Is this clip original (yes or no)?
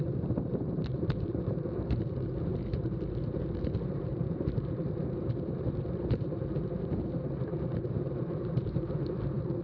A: no